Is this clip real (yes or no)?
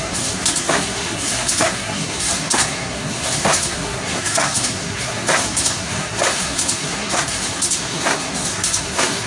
no